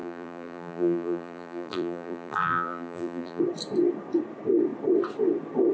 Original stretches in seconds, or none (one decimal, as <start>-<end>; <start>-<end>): 3.4-5.7